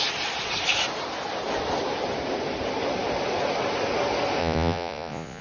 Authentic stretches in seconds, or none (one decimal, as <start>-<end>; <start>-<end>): 0.0-4.4